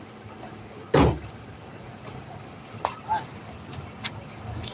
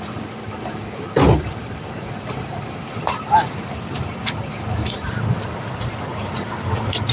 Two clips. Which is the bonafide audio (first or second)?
first